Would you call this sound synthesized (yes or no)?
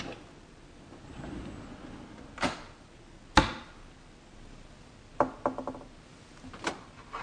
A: no